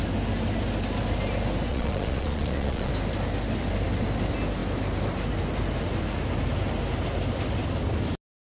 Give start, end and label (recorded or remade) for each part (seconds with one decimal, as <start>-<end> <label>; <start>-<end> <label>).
0.0-1.7 recorded; 1.7-2.9 remade; 2.9-8.4 recorded